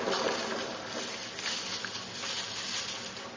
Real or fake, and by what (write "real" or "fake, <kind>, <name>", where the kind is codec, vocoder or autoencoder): real